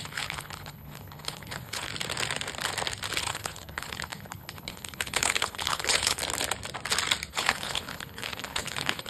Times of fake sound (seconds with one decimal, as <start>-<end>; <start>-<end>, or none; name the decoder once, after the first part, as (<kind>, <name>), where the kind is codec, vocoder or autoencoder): 0.0-1.9 (codec, HILCodec); 3.2-6.2; 7.3-9.1